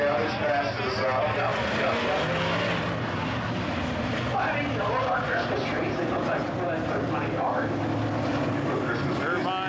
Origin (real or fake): real